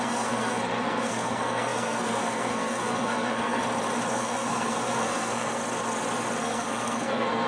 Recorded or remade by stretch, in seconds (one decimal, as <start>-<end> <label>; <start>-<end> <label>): 0.0-3.6 remade; 3.6-4.1 recorded; 4.1-5.6 remade; 5.6-6.4 recorded; 6.4-7.5 remade